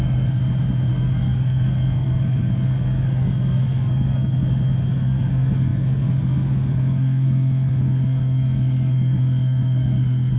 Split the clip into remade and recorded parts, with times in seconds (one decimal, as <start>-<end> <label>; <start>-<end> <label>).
0.0-0.4 remade; 0.4-0.9 recorded; 0.9-10.4 remade